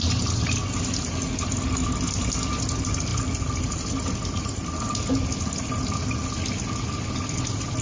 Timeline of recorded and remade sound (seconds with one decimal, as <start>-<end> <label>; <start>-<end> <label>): 0.0-7.8 recorded